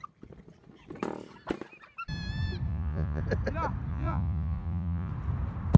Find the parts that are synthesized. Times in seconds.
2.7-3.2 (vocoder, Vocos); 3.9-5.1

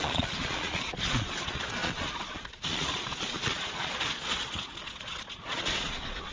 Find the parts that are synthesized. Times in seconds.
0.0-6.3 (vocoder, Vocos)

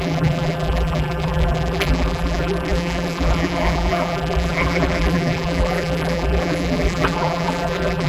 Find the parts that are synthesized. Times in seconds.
0.0-8.1 (vocoder, BigVGAN v2)

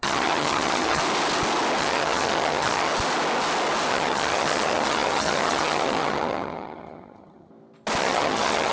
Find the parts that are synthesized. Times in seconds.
0.0-1.0 (vocoder, HiFi-GAN); 1.8-2.9; 3.9-7.5; 8.0-8.7

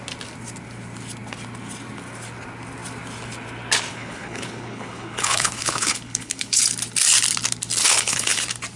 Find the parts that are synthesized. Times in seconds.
3.9-6.6 (codec, HILCodec); 7.8-8.4